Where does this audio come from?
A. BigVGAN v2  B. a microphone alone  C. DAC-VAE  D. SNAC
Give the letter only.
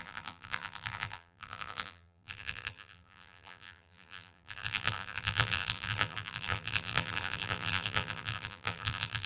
A